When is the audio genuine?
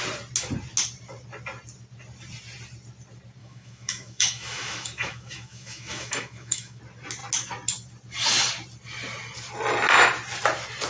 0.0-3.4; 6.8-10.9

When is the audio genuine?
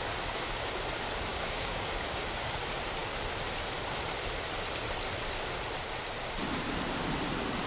0.0-1.3; 2.2-7.7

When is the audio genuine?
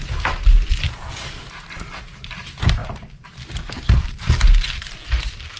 0.0-5.6